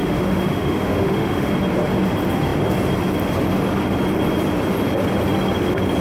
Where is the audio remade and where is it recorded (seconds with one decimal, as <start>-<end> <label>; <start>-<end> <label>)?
0.0-1.5 remade; 1.5-6.0 recorded